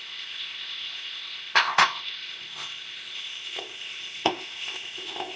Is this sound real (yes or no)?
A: no